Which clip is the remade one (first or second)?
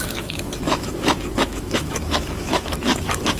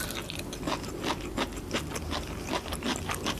first